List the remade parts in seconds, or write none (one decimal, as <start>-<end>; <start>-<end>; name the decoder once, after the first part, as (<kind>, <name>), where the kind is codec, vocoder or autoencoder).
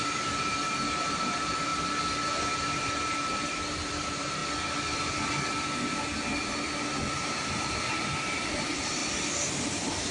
0.0-1.7 (vocoder, BigVGAN v2); 2.6-4.4; 7.1-9.0; 9.5-10.1